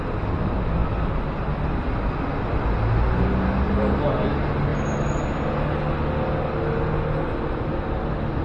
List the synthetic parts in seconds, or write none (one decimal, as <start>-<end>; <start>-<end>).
none